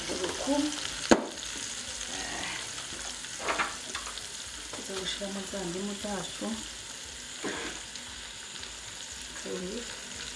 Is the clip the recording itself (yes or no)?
yes